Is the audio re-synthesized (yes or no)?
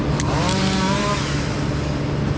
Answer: no